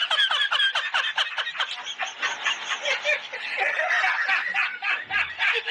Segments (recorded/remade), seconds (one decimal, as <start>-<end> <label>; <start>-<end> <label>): 0.0-5.7 recorded

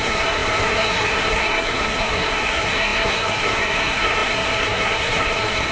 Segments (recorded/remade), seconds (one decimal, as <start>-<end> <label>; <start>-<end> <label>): 0.0-5.7 remade

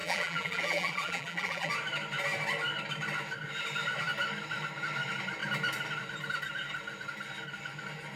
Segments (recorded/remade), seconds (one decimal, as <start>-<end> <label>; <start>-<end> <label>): 0.0-1.7 remade; 1.7-8.2 recorded